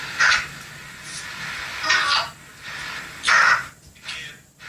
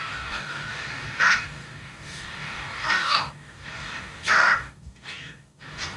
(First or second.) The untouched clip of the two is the first